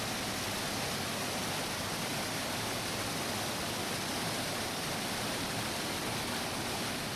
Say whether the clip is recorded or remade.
recorded